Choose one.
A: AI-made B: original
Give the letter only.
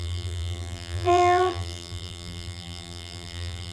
A